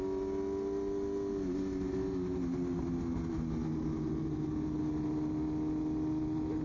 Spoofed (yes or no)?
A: no